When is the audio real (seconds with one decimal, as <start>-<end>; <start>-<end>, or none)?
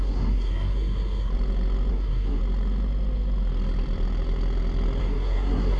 1.3-1.9; 2.4-5.0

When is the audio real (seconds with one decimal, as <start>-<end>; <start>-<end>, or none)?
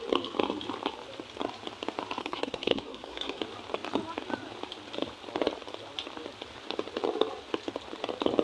0.0-2.2; 3.4-8.4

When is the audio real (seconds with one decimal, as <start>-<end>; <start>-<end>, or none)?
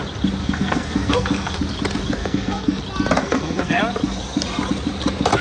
0.0-0.4; 1.6-2.2; 2.8-3.2; 3.8-5.4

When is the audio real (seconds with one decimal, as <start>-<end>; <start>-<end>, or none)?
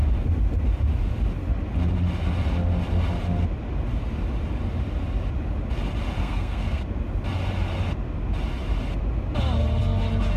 0.0-6.2; 6.8-10.4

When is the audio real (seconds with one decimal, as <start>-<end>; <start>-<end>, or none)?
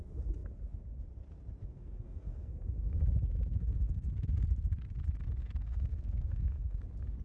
0.0-1.6; 3.0-3.5; 4.1-5.4; 6.8-7.2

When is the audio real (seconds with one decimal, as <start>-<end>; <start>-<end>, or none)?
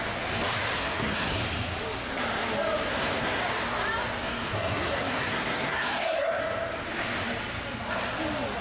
0.0-0.8; 1.4-2.9; 3.4-4.2; 6.4-8.6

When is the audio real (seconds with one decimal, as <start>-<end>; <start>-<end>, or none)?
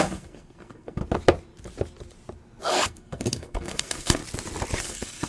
1.0-2.6; 4.2-4.8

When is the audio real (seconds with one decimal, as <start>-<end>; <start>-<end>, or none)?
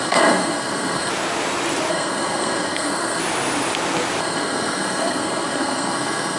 1.1-1.9; 3.2-4.2